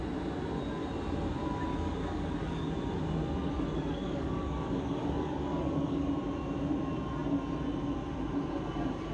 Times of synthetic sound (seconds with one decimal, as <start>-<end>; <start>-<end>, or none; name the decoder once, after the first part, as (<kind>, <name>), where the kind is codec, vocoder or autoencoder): 1.7-2.7 (codec, DAC); 3.4-6.1